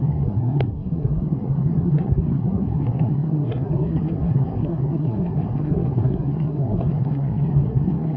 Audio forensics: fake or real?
fake